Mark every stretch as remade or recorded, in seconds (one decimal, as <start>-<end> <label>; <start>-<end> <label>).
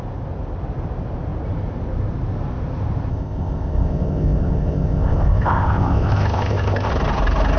0.0-3.1 recorded; 3.1-6.9 remade; 6.9-7.6 recorded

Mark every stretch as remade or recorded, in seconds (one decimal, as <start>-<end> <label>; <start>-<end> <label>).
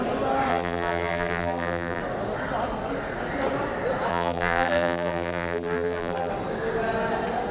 0.0-0.5 recorded; 0.5-2.0 remade; 2.0-4.1 recorded; 4.1-6.3 remade; 6.3-7.5 recorded